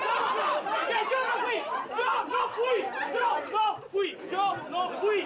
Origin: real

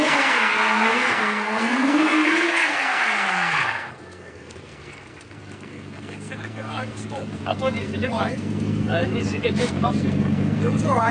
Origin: fake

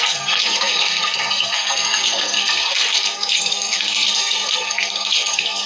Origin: fake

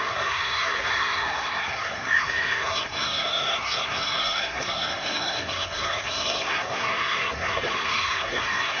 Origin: fake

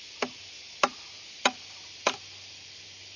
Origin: real